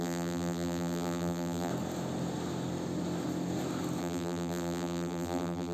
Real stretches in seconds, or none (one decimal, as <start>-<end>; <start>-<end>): 1.7-4.0